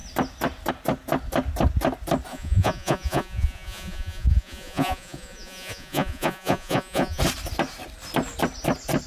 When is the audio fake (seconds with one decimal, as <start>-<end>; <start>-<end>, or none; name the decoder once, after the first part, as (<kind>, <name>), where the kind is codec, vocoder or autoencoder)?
2.3-7.2 (vocoder, Vocos)